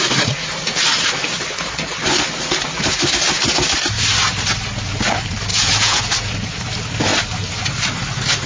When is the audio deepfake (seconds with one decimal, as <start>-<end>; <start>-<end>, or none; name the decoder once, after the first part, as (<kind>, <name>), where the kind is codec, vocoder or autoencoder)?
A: 5.5-6.0 (vocoder, Vocos)